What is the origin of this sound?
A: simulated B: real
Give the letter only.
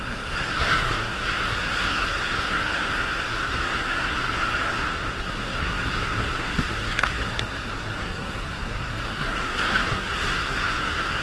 A